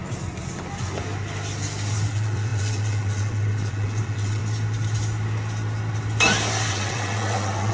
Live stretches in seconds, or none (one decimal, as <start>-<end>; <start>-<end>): 0.0-2.1; 4.4-6.7